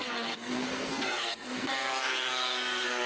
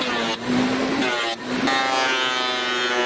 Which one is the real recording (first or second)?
second